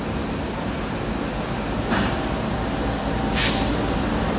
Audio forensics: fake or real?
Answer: real